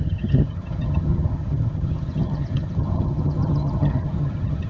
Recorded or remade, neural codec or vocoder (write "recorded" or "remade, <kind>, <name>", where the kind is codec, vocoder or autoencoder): remade, vocoder, HiFi-GAN